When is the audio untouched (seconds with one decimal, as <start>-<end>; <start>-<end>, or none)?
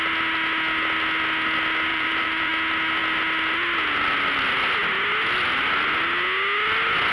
0.0-1.9; 2.5-7.1